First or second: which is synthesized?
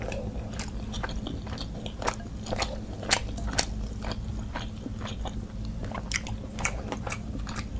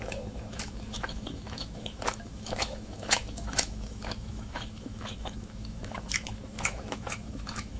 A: second